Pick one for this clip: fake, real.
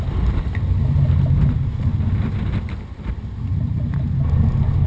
real